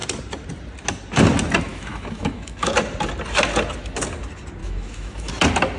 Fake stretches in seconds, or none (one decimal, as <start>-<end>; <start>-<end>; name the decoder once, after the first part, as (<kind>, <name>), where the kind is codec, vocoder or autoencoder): 1.7-2.7 (autoencoder, DAC-VAE); 4.6-5.3